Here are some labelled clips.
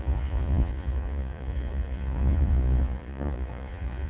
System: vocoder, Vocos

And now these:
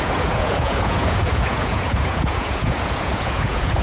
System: vocoder, Vocos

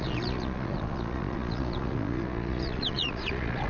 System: vocoder, Vocos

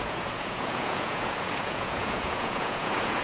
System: vocoder, Vocos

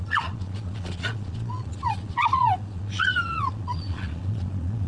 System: vocoder, Vocos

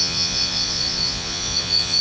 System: vocoder, Vocos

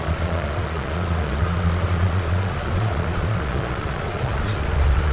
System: vocoder, Vocos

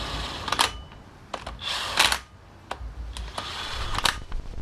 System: none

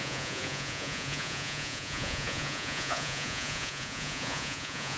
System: vocoder, Vocos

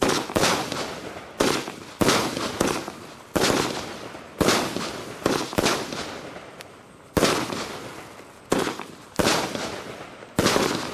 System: none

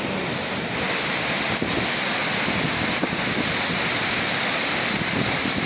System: none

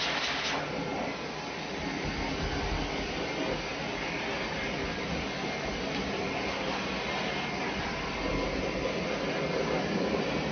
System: none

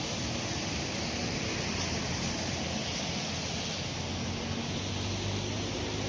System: none